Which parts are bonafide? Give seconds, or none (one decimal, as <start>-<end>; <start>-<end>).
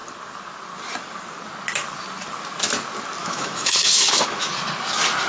0.0-3.2; 4.5-5.3